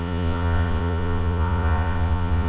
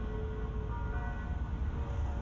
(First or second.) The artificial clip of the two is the first